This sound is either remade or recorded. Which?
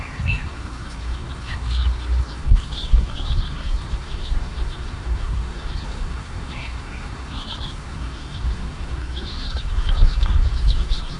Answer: remade